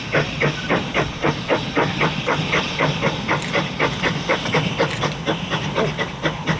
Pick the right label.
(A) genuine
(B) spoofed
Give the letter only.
A